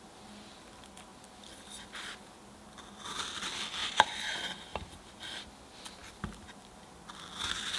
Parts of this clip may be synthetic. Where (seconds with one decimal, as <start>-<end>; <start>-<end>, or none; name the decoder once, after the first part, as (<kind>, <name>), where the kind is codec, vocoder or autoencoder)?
3.8-4.5 (vocoder, Vocos)